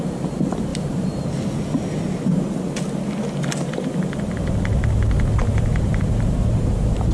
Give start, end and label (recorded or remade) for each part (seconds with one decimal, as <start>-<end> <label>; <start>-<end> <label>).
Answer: 0.0-0.7 recorded; 0.7-1.3 remade; 1.3-5.4 recorded; 5.4-7.1 remade